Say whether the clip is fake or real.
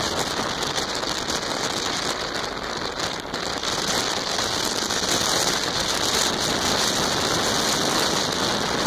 real